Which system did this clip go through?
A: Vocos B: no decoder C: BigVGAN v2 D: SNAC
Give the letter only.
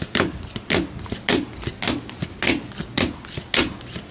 B